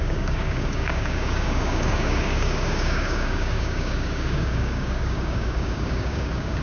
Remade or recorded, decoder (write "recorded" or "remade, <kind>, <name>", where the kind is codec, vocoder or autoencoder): remade, codec, DAC